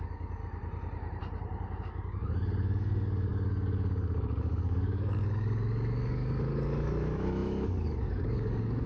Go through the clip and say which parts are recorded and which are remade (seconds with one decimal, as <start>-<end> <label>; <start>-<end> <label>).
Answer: 0.0-0.4 remade; 0.4-1.8 recorded; 1.8-8.9 remade